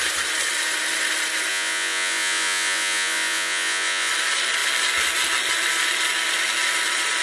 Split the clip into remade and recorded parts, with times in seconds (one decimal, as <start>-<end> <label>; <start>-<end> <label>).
0.0-1.5 recorded; 1.5-4.1 remade; 4.1-7.2 recorded